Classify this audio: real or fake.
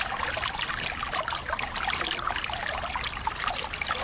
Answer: real